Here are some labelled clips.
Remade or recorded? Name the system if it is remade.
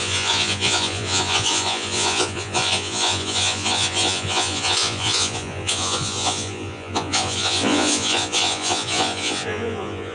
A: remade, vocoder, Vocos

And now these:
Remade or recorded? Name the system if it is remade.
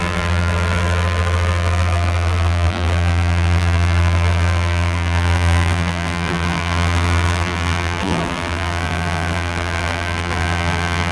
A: remade, vocoder, BigVGAN v2